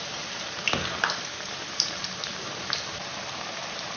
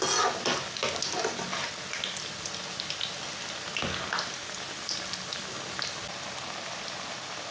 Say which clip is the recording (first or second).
second